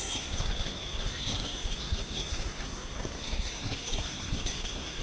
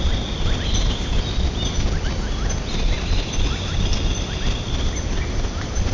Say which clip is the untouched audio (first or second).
second